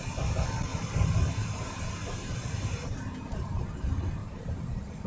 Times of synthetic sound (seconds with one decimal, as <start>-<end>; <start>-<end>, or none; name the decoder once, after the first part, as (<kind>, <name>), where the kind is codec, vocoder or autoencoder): 0.7-3.8 (vocoder, BigVGAN v2); 4.2-5.1